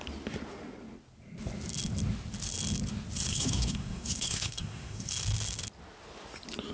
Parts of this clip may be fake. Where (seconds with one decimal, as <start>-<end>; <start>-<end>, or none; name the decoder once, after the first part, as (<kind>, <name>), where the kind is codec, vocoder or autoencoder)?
3.3-5.1 (codec, SNAC)